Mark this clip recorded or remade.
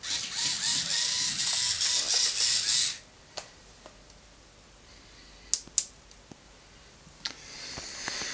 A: recorded